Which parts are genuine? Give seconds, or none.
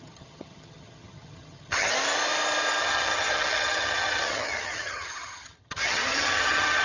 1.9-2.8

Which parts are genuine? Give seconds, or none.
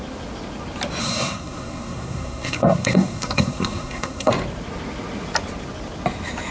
0.0-1.0; 4.3-6.5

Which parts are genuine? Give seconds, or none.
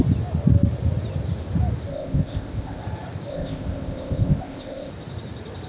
0.0-1.9; 2.8-3.3; 4.9-5.7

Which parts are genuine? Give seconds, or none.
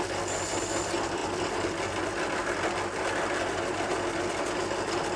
0.0-5.2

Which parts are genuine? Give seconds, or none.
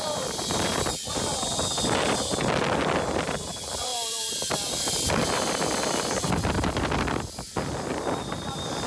0.0-8.9